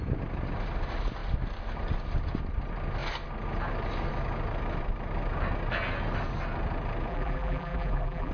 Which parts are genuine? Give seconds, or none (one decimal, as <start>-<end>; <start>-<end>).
0.0-7.1